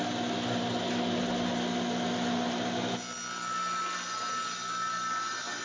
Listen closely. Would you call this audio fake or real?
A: real